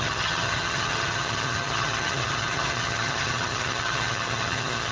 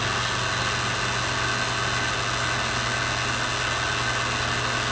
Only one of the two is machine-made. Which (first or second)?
first